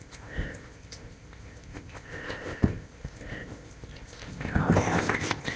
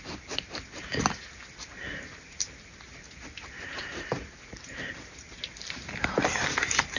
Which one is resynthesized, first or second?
first